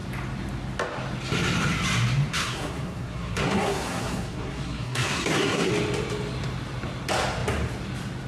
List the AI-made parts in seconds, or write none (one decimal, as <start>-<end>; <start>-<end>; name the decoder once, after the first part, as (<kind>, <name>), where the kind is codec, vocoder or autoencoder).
2.3-5.7 (codec, SNAC)